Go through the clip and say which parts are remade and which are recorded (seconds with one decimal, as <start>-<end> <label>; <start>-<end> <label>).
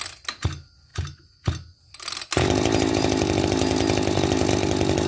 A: 0.0-5.1 recorded